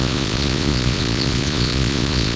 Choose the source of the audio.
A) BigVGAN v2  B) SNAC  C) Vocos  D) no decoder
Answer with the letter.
C